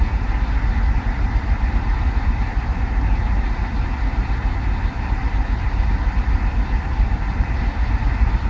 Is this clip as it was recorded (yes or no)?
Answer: yes